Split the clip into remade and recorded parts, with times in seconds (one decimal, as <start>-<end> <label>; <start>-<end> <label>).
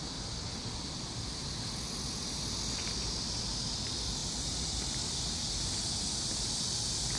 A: 0.0-7.2 recorded